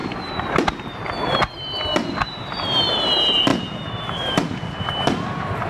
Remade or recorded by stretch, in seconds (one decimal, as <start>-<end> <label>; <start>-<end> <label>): 0.0-3.5 remade; 3.5-4.8 recorded; 4.8-5.7 remade